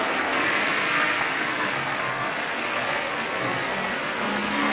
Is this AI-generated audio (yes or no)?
yes